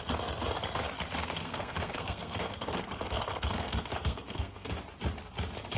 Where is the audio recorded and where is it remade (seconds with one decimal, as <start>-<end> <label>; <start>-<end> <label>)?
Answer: 0.0-1.2 recorded; 1.2-4.7 remade; 4.7-5.8 recorded